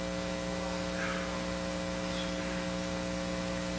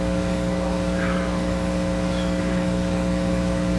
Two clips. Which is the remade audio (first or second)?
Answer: second